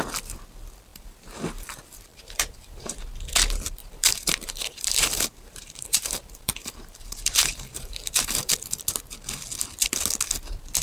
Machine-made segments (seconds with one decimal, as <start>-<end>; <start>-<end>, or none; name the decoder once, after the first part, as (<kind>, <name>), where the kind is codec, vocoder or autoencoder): 0.9-1.7 (vocoder, BigVGAN v2); 2.1-3.0; 3.8-8.5